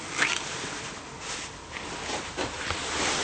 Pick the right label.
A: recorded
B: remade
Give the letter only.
A